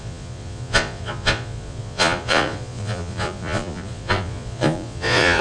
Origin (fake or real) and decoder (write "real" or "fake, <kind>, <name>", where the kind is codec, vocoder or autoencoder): fake, vocoder, Vocos